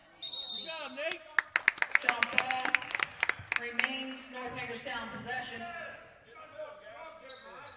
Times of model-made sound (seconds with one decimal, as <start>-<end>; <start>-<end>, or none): none